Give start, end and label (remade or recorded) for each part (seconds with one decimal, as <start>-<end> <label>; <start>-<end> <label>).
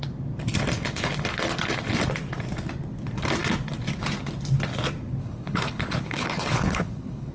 0.0-5.2 recorded; 5.2-7.3 remade